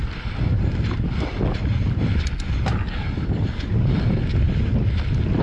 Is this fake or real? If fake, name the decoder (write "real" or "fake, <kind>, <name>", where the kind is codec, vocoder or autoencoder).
real